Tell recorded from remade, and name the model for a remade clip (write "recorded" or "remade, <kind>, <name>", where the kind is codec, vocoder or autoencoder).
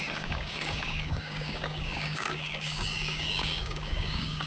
remade, codec, DAC